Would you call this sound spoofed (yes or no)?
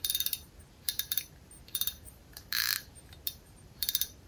yes